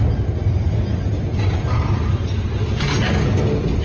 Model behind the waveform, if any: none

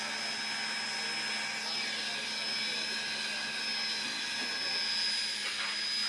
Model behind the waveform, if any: none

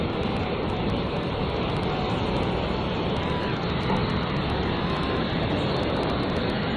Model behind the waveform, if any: none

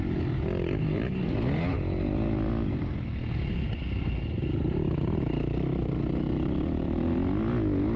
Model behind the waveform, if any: none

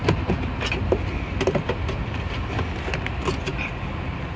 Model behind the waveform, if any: none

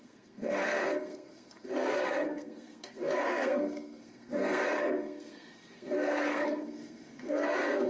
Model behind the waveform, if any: codec, SNAC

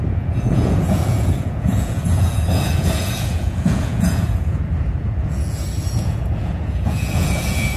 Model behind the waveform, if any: vocoder, Vocos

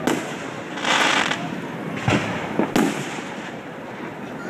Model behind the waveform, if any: none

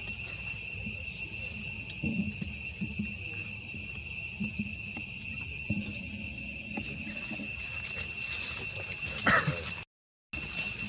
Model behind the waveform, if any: none